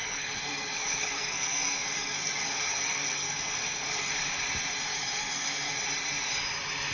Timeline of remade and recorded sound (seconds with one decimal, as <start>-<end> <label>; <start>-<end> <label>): 0.0-4.1 remade; 4.1-4.9 recorded; 4.9-5.8 remade; 5.8-6.9 recorded